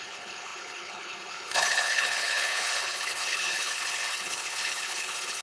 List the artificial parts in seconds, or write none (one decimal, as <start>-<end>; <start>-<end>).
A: 0.0-5.4

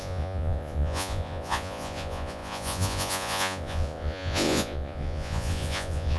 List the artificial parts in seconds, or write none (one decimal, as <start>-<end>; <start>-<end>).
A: 0.0-6.2

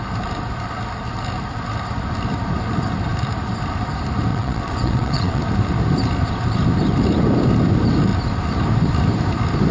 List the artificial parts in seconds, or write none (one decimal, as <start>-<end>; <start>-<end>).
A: 4.3-5.4